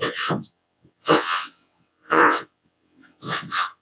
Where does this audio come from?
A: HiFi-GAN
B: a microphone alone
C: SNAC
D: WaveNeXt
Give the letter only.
D